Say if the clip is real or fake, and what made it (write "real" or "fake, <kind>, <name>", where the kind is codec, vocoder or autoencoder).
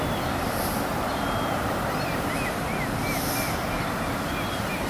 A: real